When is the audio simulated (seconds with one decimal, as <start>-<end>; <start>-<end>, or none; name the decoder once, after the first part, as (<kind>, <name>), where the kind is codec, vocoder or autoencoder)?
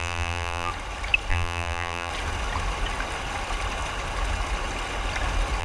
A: 0.0-0.7 (vocoder, BigVGAN v2); 1.3-2.1